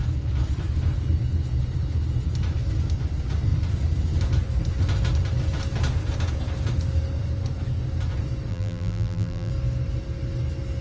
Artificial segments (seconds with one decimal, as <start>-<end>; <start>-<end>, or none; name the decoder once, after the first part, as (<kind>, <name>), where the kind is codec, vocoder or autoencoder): 8.5-9.5 (vocoder, BigVGAN v2)